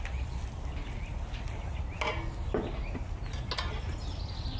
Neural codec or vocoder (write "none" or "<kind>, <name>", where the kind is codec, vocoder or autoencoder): none